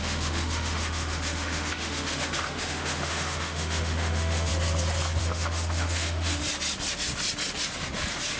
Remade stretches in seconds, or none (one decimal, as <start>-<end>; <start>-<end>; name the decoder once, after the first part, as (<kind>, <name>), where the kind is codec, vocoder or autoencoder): 0.0-4.5 (autoencoder, DAC-VAE); 5.2-6.4